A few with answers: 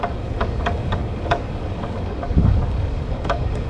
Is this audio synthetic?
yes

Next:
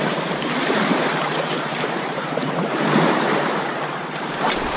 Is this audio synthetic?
yes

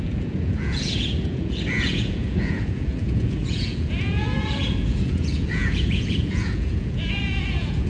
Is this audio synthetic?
yes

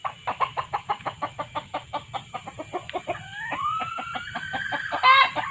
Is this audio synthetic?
no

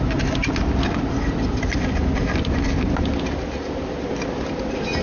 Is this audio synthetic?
no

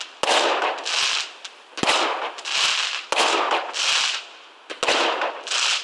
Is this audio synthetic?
no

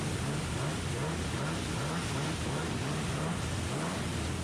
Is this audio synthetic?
no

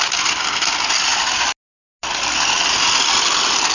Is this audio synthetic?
no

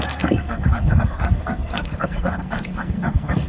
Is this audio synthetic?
yes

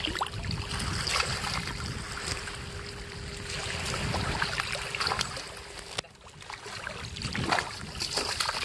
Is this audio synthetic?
no